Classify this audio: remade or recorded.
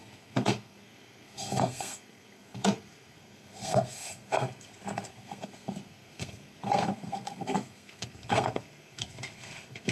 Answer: remade